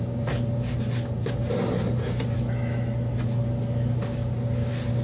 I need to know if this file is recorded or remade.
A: recorded